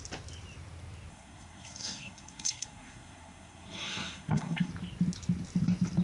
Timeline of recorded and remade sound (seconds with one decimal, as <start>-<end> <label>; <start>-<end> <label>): 0.0-1.1 recorded; 1.1-4.7 remade; 4.7-6.0 recorded